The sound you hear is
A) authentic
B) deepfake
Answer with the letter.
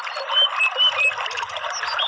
A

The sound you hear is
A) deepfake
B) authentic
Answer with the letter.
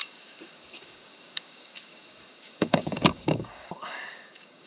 A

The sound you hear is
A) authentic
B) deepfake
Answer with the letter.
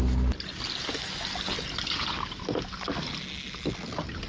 A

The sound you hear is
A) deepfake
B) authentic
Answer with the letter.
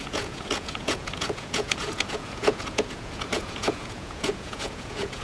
A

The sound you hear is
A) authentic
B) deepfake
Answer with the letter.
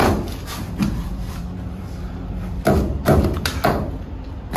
B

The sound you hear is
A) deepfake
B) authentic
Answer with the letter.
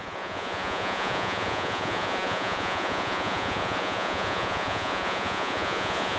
A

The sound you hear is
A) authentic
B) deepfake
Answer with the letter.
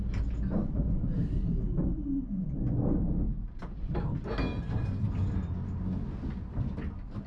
A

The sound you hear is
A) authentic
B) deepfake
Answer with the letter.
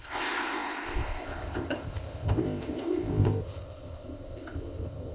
B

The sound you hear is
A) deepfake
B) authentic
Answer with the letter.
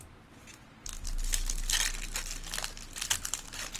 B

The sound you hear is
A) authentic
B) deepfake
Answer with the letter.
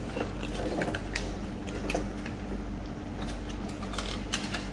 A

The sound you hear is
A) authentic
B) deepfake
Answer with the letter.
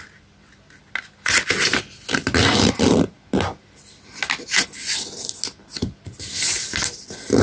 A